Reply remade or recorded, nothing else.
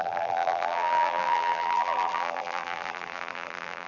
remade